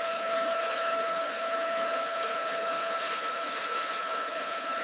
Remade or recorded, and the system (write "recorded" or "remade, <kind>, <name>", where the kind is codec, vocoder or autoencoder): remade, codec, HILCodec